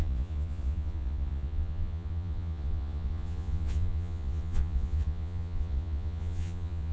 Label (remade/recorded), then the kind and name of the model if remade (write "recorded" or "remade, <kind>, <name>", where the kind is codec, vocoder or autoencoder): remade, vocoder, Vocos